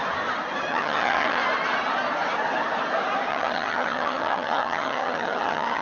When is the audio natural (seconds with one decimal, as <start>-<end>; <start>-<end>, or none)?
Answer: 0.0-0.7; 1.4-3.3